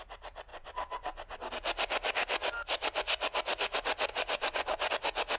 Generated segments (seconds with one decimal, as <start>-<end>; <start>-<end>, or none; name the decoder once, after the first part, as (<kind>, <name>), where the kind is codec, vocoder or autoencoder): 0.5-1.5 (vocoder, Vocos); 4.1-4.9